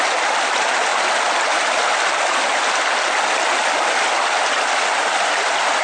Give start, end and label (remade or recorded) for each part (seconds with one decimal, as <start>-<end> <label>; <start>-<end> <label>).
0.0-5.8 recorded